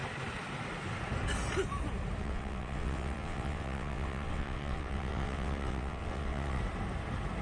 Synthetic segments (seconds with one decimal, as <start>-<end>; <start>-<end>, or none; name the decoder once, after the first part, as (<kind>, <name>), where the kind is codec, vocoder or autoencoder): 2.2-6.6 (vocoder, WaveNeXt)

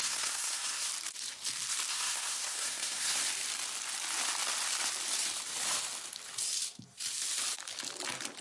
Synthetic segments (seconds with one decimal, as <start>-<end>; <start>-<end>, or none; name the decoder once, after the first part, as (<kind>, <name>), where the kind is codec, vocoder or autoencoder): 0.0-0.9 (codec, SNAC); 1.9-3.2